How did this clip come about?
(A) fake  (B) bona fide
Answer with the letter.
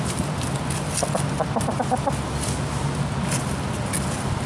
B